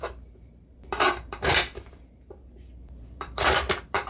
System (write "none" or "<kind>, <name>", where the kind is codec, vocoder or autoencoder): vocoder, BigVGAN v2